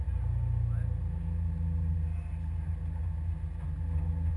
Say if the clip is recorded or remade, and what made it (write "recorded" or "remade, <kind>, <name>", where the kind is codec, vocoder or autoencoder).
recorded